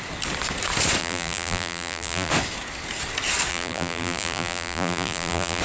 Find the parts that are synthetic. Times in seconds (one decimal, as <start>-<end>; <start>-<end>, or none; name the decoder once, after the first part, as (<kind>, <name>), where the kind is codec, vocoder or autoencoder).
1.0-2.3 (vocoder, BigVGAN v2); 3.5-5.6

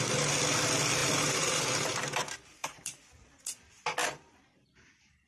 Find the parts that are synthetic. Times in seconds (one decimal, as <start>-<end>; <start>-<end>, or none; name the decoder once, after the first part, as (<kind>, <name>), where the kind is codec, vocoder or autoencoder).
1.0-1.6 (vocoder, BigVGAN v2); 2.6-3.1; 4.0-4.7

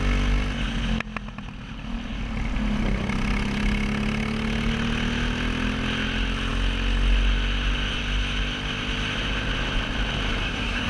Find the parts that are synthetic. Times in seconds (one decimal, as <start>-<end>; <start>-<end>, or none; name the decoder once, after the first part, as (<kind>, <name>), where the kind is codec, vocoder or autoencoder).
10.4-10.9 (codec, SNAC)

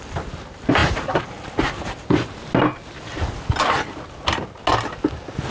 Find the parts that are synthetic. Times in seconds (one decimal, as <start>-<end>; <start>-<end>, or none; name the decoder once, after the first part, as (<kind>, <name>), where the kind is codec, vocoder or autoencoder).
0.8-1.6 (vocoder, BigVGAN v2)

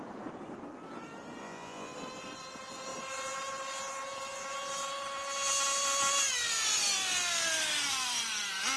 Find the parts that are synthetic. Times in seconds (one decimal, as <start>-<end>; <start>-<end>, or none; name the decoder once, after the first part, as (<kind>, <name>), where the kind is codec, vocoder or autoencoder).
1.4-1.9 (vocoder, Vocos)

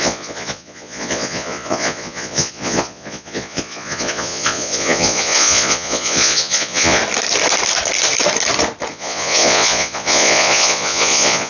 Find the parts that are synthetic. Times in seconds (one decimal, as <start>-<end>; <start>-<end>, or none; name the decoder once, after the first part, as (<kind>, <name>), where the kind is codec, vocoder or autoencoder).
0.0-7.0 (vocoder, Vocos); 8.9-11.5

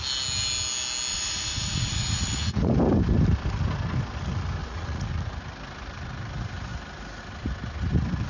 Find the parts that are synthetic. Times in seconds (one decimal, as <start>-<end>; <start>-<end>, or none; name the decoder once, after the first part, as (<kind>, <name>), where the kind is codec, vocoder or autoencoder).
1.1-2.7 (vocoder, Vocos); 4.6-5.1

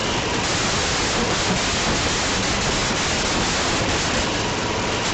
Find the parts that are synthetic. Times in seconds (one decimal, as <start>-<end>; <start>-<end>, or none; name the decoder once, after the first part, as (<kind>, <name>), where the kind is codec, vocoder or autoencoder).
none